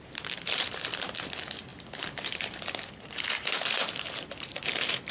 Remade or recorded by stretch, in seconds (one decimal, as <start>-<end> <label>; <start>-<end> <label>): 0.0-5.1 remade